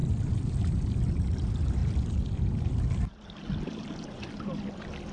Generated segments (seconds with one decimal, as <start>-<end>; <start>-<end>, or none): none